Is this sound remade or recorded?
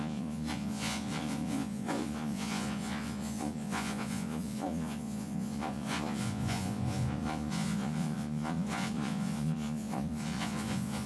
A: remade